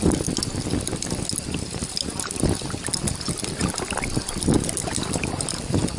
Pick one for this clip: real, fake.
real